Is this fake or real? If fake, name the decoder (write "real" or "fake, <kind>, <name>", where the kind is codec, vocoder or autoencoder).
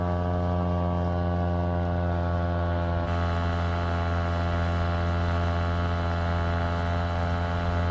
real